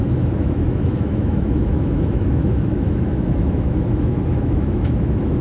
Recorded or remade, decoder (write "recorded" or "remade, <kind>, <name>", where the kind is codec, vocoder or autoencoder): remade, autoencoder, DAC-VAE